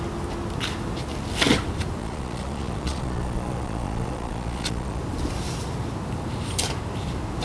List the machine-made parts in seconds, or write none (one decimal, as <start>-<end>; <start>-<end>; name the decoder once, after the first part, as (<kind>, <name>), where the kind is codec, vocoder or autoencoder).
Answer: 2.0-5.0 (vocoder, Vocos)